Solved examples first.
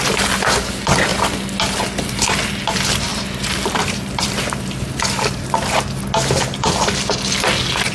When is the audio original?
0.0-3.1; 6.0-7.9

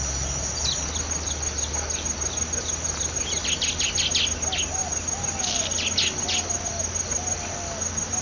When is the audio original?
0.0-8.2

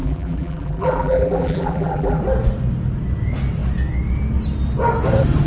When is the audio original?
2.2-5.5

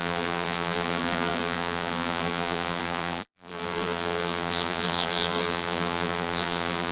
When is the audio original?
none

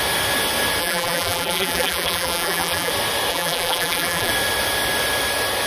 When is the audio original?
0.0-0.8; 2.9-3.3; 4.3-5.7